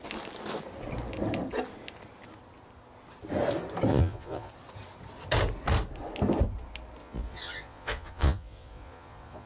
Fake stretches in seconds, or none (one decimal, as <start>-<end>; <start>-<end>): 3.9-4.5; 7.0-9.5